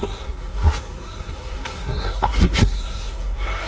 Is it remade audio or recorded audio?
remade